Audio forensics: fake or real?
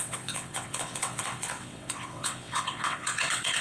fake